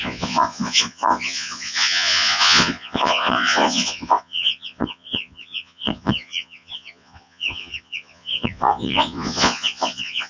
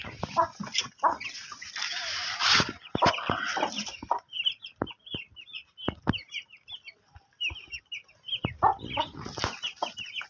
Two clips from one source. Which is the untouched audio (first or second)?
second